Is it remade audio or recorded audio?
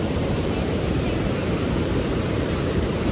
remade